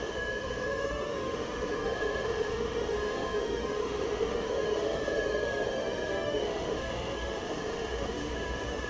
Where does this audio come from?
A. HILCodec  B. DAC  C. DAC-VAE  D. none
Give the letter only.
C